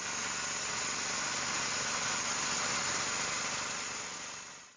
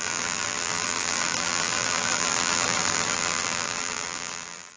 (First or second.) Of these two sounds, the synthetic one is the second